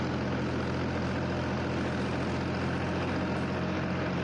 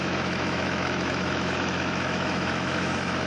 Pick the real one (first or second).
first